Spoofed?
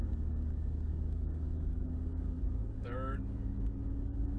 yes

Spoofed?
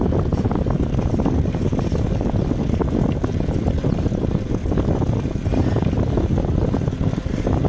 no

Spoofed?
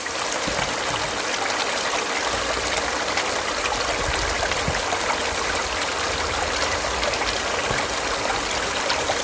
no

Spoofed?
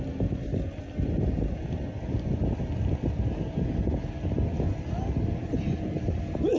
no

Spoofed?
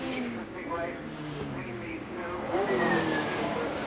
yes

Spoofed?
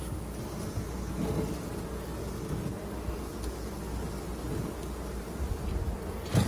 no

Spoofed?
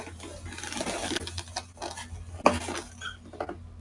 no